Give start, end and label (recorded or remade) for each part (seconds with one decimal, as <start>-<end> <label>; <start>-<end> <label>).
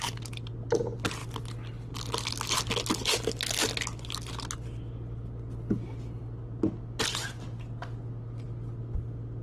0.0-9.4 recorded